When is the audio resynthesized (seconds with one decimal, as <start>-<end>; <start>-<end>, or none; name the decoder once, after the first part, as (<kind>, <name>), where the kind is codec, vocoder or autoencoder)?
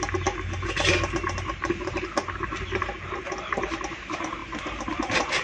none